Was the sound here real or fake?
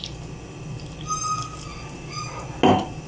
real